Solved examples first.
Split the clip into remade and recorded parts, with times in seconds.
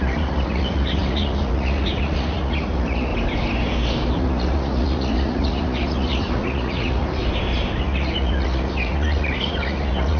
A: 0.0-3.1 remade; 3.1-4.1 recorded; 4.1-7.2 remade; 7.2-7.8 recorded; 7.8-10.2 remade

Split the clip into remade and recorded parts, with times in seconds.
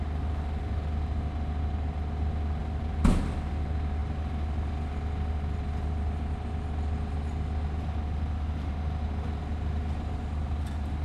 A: 0.0-2.6 recorded; 2.6-3.5 remade; 3.5-11.0 recorded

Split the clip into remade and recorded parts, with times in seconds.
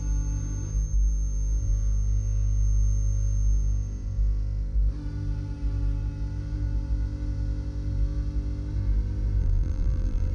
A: 0.0-9.4 recorded; 9.4-10.3 remade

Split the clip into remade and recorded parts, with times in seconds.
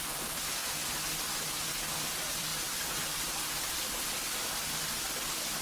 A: 0.0-0.6 remade; 0.6-1.9 recorded; 1.9-5.6 remade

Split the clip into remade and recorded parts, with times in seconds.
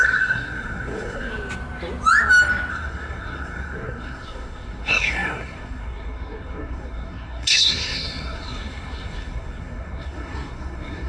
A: 0.0-1.3 remade; 1.3-2.7 recorded; 2.7-11.1 remade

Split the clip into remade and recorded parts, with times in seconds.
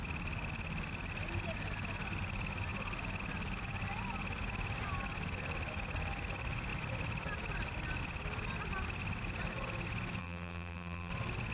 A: 0.0-10.2 recorded; 10.2-11.1 remade; 11.1-11.5 recorded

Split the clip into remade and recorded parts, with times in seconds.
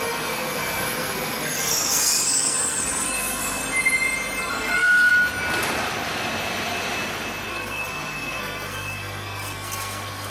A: 0.0-3.6 remade; 3.6-4.4 recorded; 4.4-5.1 remade; 5.1-7.5 recorded; 7.5-10.3 remade